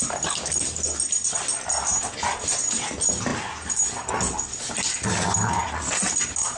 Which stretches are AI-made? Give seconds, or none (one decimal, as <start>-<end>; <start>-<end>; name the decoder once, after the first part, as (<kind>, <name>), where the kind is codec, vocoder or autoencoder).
none